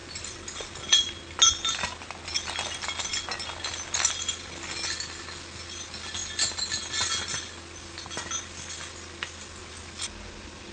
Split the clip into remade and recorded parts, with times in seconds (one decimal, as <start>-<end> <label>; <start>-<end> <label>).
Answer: 0.0-10.7 recorded